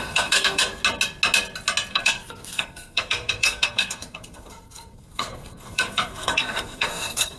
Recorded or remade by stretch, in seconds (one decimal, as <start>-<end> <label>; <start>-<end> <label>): 0.0-0.8 remade; 0.8-1.9 recorded; 1.9-7.4 remade